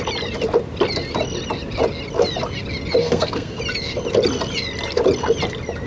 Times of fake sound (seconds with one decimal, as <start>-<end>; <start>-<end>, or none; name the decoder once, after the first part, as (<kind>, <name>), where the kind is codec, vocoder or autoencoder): 3.0-3.6 (codec, SNAC)